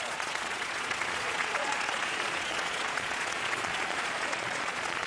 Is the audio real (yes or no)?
no